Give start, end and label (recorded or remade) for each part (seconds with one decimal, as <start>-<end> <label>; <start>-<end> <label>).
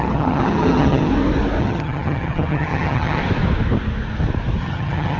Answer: 0.0-1.1 remade; 1.1-1.6 recorded; 1.6-3.2 remade; 3.2-4.6 recorded; 4.6-5.2 remade